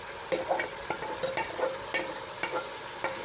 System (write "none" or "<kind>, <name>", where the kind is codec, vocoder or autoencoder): none